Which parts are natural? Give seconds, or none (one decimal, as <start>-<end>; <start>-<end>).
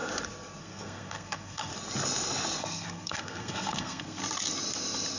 0.0-0.6; 1.7-2.6; 4.2-5.2